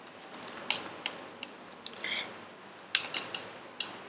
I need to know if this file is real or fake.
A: real